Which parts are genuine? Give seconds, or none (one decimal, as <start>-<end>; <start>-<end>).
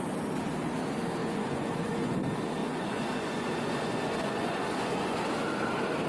0.0-1.2; 2.2-2.6; 5.2-6.1